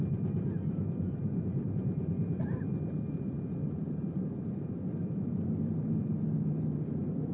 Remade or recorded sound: remade